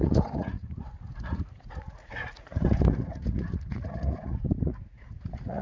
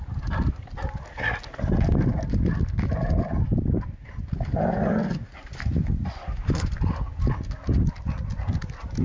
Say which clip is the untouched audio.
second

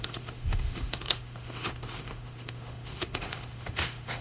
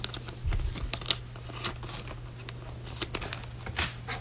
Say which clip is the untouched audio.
second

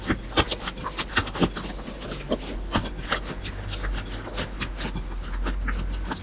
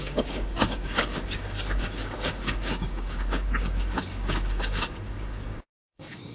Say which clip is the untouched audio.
first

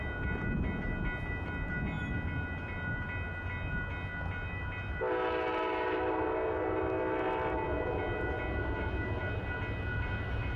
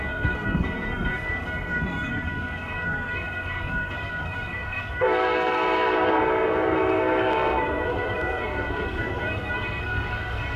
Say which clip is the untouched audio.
first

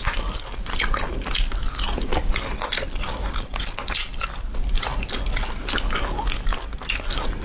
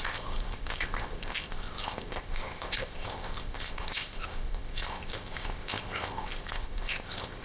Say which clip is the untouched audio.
first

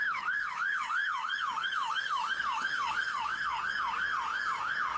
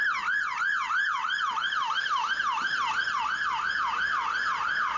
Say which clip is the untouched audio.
second